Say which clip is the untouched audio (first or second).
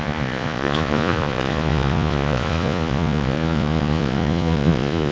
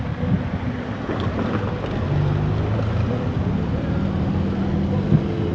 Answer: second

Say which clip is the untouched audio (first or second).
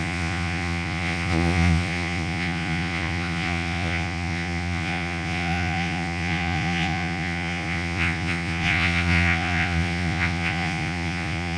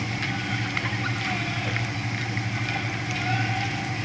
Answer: second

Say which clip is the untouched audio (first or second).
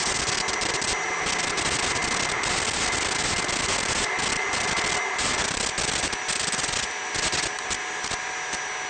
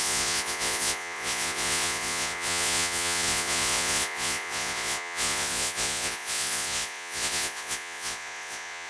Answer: first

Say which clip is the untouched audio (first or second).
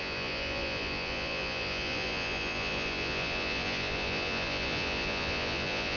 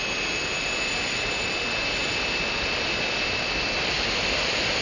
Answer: second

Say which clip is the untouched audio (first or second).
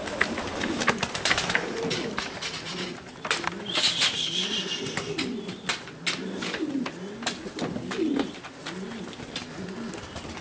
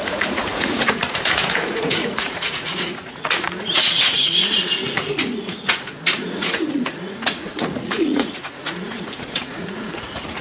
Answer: first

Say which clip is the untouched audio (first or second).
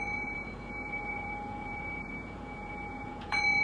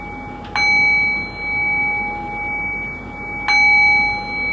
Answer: second